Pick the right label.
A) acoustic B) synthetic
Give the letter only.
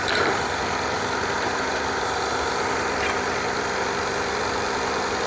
B